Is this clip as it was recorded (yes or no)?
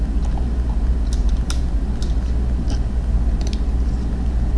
yes